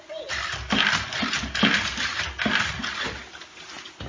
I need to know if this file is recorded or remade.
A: recorded